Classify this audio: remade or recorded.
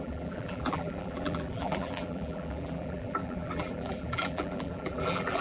remade